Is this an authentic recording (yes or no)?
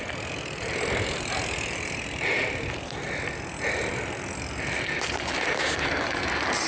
yes